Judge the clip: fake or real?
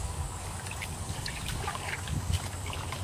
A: fake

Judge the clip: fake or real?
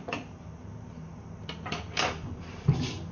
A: fake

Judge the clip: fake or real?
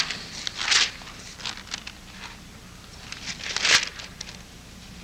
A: real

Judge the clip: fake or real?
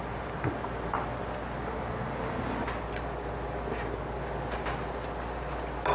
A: real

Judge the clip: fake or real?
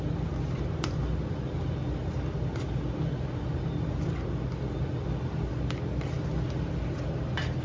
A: real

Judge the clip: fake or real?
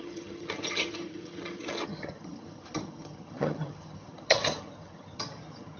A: fake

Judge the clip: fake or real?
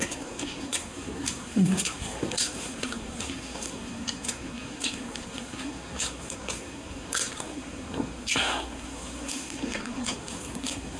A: fake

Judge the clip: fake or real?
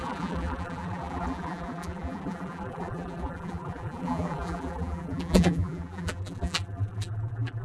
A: fake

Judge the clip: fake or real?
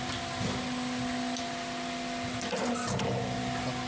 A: real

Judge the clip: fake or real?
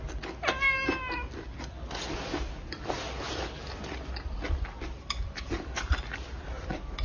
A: real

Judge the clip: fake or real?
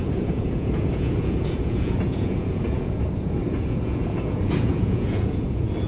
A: fake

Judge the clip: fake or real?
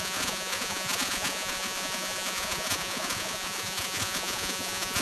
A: fake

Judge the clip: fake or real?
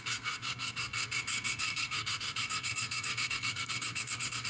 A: fake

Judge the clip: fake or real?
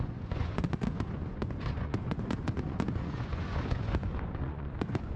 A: fake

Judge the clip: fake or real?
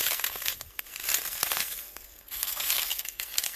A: fake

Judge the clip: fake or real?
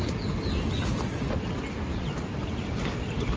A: real